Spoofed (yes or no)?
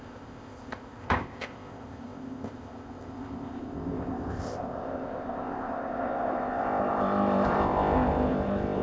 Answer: yes